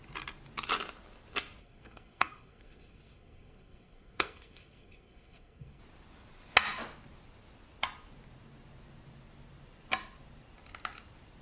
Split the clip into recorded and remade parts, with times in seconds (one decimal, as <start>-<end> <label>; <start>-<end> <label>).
0.0-1.6 recorded; 1.6-5.8 remade; 5.8-11.4 recorded